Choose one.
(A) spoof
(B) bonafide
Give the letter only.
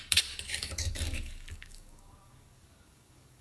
A